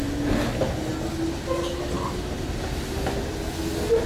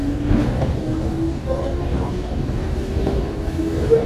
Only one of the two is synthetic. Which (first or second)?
second